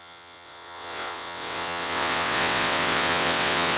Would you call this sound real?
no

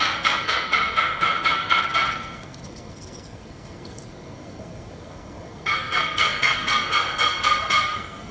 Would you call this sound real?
no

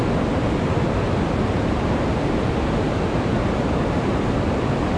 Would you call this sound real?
yes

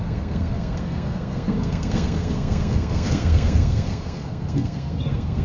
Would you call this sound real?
no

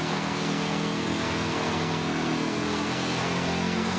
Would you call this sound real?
no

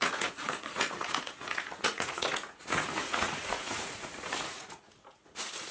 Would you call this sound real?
no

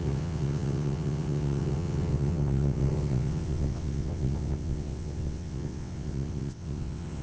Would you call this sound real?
no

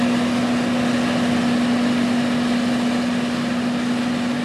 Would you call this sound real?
yes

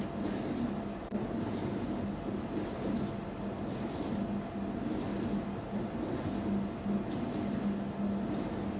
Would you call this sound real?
yes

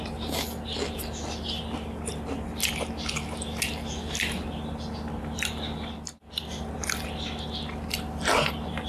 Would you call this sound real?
yes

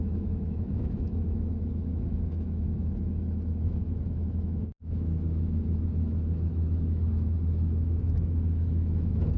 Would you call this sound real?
no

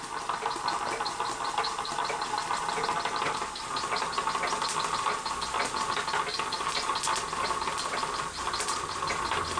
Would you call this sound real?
yes